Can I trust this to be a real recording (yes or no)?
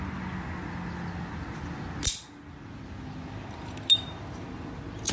yes